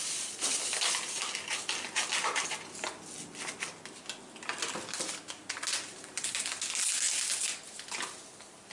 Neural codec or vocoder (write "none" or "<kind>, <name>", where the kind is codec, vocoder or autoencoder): none